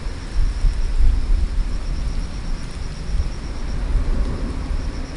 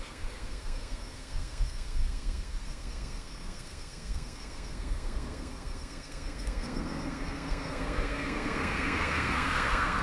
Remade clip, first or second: second